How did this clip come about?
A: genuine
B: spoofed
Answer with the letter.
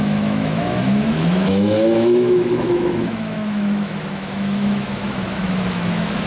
B